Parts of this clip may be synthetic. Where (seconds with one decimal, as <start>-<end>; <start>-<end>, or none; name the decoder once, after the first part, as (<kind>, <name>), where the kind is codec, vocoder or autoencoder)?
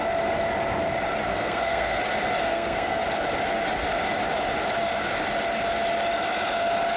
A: 1.3-2.0 (codec, SNAC); 2.4-3.0